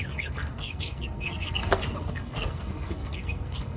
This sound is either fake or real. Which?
fake